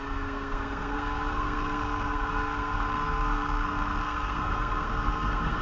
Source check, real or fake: fake